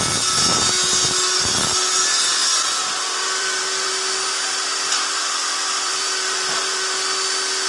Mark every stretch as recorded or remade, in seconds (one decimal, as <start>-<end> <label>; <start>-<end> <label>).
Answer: 0.0-2.4 recorded; 2.4-3.9 remade; 3.9-5.2 recorded; 5.2-6.8 remade; 6.8-7.7 recorded